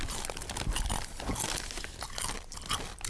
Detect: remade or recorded recorded